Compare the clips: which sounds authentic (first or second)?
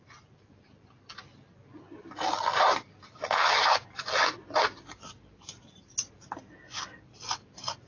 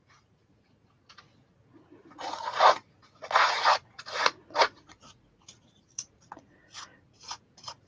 first